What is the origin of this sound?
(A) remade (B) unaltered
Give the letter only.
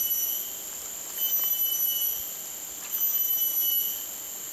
B